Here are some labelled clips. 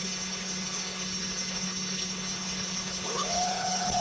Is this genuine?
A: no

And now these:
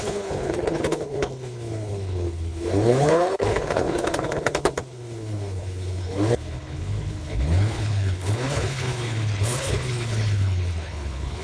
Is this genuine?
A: no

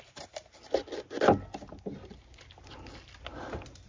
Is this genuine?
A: yes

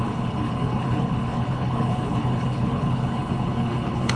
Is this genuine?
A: no